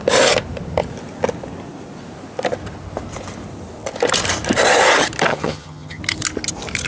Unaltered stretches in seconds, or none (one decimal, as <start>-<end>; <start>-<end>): 0.0-5.3; 6.0-6.9